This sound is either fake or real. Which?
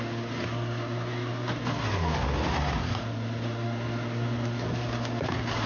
real